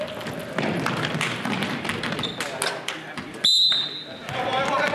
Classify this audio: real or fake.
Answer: real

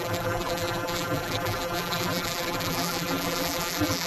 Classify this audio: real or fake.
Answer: fake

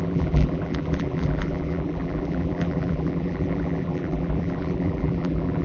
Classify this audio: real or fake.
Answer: fake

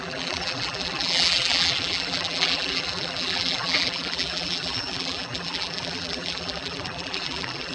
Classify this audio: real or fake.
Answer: fake